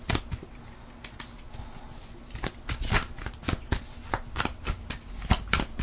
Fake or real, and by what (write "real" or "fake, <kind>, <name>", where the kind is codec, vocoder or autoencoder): real